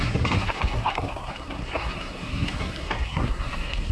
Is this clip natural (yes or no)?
no